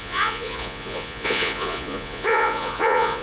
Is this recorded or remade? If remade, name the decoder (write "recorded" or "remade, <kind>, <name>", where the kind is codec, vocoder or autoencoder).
remade, vocoder, Vocos